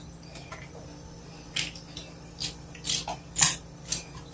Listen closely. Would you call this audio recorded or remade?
recorded